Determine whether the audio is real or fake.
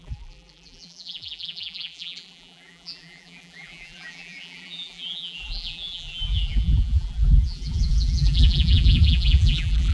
fake